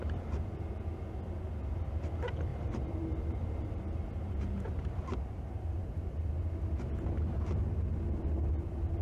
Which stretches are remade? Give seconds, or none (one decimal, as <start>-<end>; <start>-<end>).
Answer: 2.5-3.8